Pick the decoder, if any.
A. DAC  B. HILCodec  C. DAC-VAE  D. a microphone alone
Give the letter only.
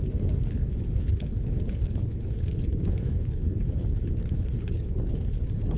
B